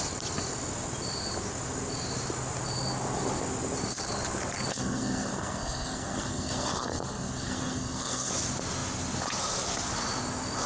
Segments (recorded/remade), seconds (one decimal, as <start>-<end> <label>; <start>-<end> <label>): 0.0-4.7 recorded; 4.7-8.3 remade; 8.3-10.7 recorded